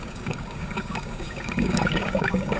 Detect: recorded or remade remade